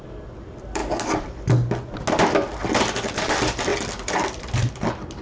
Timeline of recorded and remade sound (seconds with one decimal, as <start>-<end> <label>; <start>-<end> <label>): 0.0-0.8 remade; 0.8-3.1 recorded; 3.1-5.2 remade

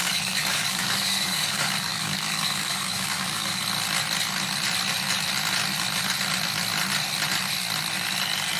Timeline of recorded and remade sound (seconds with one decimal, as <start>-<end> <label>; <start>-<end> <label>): 0.0-3.6 remade; 3.6-8.6 recorded